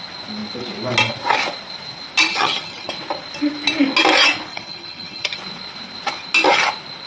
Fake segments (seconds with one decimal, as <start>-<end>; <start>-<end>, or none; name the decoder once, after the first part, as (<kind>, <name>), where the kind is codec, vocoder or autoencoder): 2.3-2.9 (vocoder, HiFi-GAN); 4.5-5.4